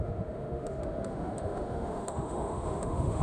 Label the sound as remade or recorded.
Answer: remade